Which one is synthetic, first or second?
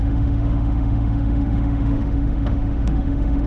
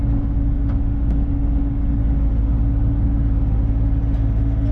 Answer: first